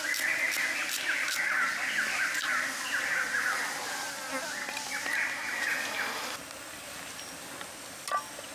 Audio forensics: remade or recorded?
recorded